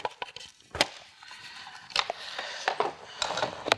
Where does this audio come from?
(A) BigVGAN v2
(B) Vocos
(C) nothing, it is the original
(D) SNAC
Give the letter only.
C